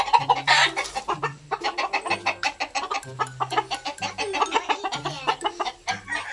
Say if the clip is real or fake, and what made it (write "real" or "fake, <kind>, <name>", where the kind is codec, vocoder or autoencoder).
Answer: fake, vocoder, BigVGAN v2